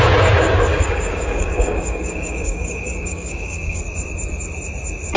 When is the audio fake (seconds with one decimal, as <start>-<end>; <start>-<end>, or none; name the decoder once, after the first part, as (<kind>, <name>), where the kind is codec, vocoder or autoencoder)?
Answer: 0.7-3.8 (codec, DAC)